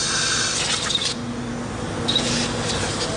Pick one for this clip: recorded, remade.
recorded